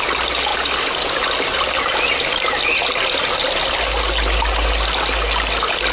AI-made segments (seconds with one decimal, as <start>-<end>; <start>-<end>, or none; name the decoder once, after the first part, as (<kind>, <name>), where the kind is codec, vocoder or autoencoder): none